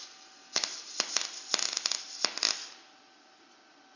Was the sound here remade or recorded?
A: recorded